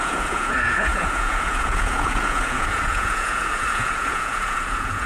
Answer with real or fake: fake